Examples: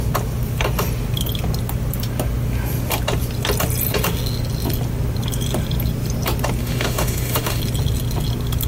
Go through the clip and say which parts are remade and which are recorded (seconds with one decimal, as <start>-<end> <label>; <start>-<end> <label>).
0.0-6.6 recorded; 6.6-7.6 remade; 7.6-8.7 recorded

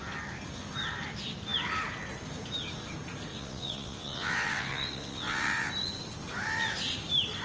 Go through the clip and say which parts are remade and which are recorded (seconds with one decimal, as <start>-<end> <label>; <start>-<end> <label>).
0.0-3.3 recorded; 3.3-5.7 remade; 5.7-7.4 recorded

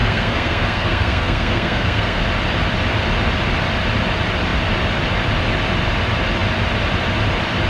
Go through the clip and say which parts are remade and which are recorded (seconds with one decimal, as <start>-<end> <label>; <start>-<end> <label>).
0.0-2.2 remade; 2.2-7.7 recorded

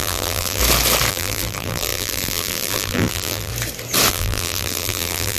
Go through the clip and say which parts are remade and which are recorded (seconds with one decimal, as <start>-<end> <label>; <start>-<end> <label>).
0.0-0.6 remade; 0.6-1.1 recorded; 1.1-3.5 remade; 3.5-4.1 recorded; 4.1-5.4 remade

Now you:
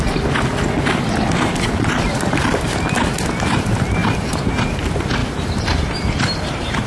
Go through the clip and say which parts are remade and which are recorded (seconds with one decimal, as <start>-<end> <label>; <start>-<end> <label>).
0.0-4.0 recorded; 4.0-4.8 remade; 4.8-5.2 recorded; 5.2-6.9 remade